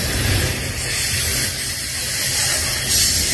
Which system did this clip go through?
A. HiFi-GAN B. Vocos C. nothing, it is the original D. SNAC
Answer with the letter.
C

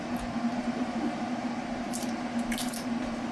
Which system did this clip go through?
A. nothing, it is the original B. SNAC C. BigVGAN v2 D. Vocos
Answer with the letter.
C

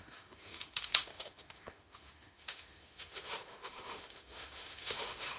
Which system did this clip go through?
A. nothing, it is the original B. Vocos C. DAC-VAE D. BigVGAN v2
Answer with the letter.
C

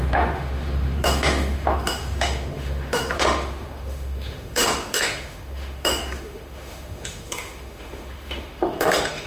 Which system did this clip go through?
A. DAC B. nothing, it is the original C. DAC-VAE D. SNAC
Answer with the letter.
C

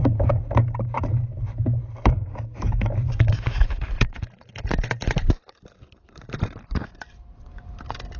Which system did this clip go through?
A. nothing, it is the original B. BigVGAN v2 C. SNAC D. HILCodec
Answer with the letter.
B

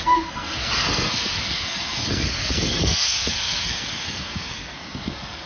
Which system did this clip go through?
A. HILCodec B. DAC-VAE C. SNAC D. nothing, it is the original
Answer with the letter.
C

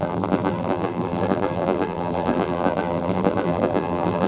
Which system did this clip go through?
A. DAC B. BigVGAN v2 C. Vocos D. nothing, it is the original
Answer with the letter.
B